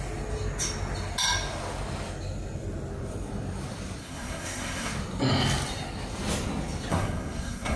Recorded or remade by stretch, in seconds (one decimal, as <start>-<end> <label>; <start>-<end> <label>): 0.0-4.0 recorded; 4.0-4.9 remade; 4.9-6.9 recorded; 6.9-7.8 remade